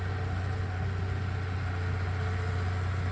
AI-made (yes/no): no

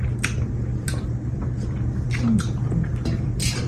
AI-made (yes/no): no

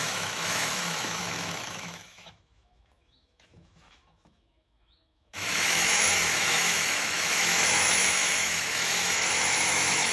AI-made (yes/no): yes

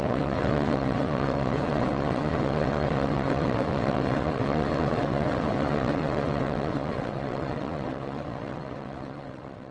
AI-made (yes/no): yes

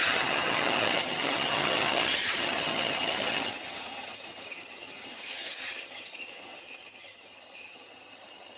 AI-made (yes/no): yes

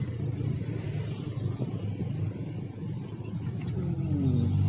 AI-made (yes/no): no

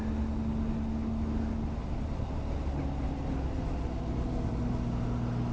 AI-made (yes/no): no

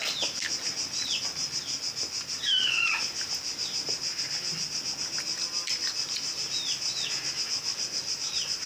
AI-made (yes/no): no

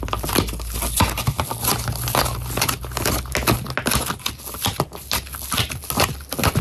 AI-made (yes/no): no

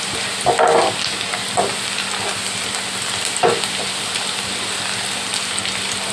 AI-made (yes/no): no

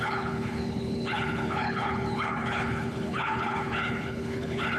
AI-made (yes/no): yes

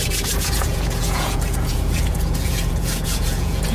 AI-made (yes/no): yes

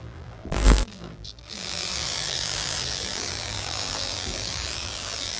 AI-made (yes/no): yes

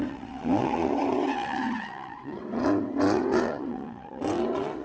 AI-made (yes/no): yes